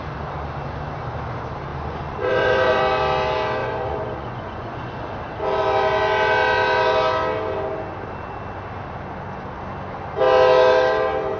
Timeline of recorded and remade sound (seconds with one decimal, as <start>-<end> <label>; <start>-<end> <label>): 0.0-1.7 recorded; 1.7-2.8 remade; 2.8-3.6 recorded; 3.6-5.0 remade; 5.0-11.4 recorded